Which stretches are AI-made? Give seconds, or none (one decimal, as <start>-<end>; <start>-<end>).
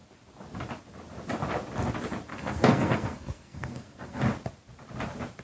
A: 2.3-4.2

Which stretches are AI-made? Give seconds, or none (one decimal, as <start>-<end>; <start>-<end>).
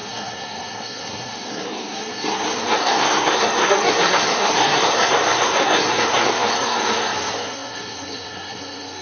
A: 0.0-9.0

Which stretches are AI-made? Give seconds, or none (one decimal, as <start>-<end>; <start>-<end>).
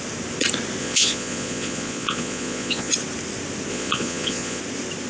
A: 0.8-2.9; 3.7-4.6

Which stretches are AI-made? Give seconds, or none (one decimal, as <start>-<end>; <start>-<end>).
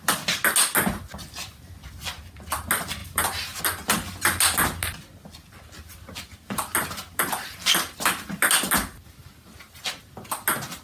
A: 3.0-3.6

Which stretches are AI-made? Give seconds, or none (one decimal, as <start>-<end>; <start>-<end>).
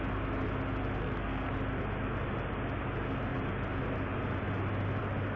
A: 1.0-1.5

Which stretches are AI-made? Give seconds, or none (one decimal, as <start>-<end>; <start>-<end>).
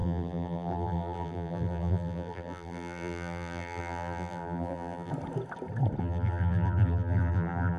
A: 0.0-5.1; 6.0-7.8